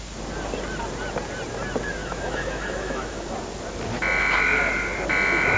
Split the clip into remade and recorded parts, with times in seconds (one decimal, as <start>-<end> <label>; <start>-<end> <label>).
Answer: 0.0-2.0 recorded; 2.0-3.3 remade; 3.3-5.6 recorded

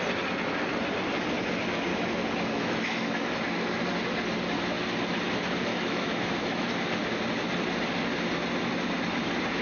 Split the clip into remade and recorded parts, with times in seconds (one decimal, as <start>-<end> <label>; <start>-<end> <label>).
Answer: 0.0-1.9 recorded; 1.9-3.8 remade; 3.8-5.7 recorded; 5.7-6.7 remade; 6.7-9.6 recorded